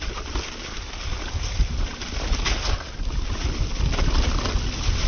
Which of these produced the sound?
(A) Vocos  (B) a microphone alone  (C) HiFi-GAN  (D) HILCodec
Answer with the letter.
B